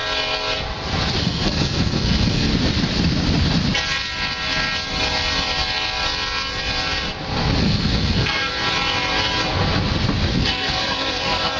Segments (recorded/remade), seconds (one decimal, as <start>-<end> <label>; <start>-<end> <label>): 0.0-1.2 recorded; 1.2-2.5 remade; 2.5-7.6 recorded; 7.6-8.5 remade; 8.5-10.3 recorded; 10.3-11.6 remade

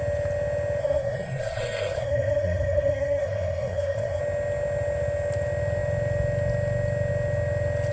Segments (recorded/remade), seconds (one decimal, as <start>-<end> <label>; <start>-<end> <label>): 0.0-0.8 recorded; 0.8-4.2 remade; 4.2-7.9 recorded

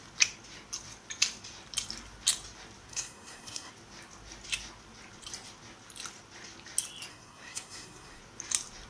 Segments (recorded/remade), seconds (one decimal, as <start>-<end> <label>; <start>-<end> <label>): 0.0-2.9 recorded; 2.9-3.7 remade; 3.7-7.1 recorded; 7.1-8.2 remade; 8.2-8.9 recorded

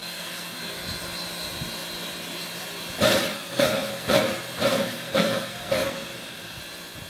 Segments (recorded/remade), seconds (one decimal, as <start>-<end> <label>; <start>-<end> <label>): 0.0-0.6 remade; 0.6-3.3 recorded; 3.3-4.2 remade; 4.2-4.7 recorded; 4.7-6.6 remade; 6.6-7.1 recorded

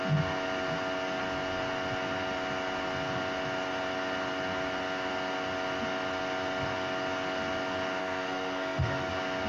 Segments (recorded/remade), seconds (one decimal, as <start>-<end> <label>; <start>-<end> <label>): 0.0-8.0 recorded; 8.0-9.1 remade; 9.1-9.5 recorded